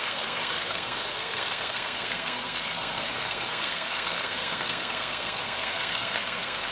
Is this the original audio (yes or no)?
no